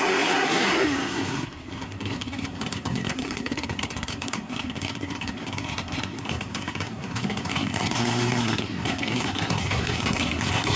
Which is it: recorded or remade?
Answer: remade